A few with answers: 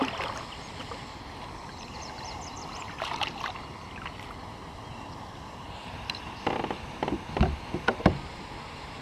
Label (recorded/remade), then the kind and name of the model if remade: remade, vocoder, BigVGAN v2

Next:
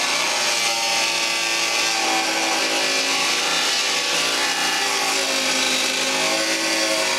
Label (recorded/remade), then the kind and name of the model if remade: recorded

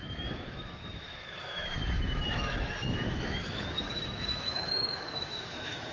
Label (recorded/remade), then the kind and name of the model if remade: remade, autoencoder, DAC-VAE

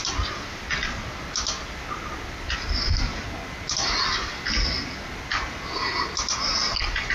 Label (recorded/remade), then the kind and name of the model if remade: recorded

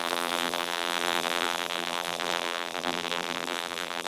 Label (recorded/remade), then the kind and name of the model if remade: remade, vocoder, BigVGAN v2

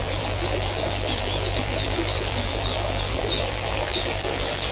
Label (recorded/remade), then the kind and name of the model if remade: remade, vocoder, BigVGAN v2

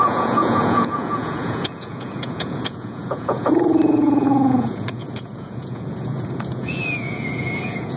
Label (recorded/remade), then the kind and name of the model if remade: remade, vocoder, Vocos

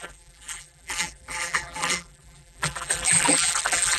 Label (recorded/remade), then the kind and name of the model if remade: remade, vocoder, BigVGAN v2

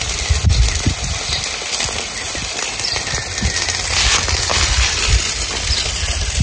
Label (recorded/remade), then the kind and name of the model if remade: recorded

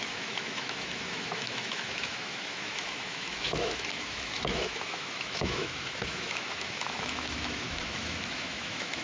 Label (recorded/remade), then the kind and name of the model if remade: remade, autoencoder, DAC-VAE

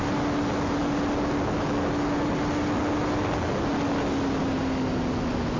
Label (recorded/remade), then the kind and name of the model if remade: recorded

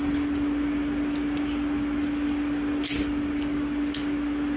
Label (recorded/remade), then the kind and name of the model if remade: recorded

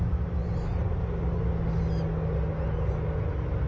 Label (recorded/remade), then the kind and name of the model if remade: recorded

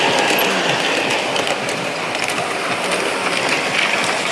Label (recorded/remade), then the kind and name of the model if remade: recorded